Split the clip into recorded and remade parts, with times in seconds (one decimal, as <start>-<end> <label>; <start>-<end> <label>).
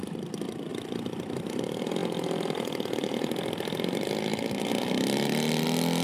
0.0-6.0 recorded